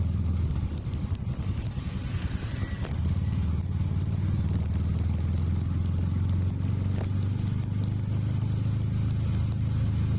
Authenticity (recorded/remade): recorded